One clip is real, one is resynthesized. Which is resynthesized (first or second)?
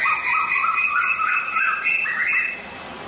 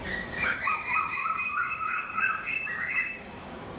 second